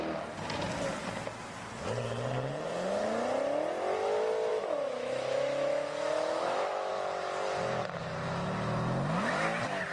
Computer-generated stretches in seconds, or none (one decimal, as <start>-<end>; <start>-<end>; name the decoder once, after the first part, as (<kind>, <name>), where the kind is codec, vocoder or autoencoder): 4.5-6.9 (autoencoder, DAC-VAE)